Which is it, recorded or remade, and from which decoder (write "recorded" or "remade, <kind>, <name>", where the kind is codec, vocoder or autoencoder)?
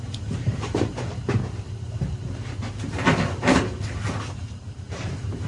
remade, vocoder, BigVGAN v2